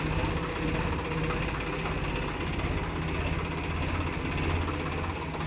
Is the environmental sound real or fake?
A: real